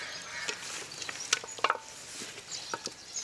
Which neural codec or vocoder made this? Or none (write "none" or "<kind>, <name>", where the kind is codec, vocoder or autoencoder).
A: none